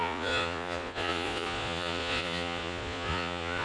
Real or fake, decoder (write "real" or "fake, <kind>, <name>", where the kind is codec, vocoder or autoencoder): fake, vocoder, Vocos